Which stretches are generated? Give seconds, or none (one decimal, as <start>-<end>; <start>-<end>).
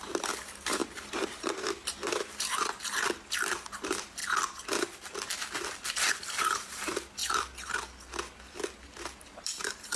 0.0-4.2; 6.4-7.2; 9.2-10.0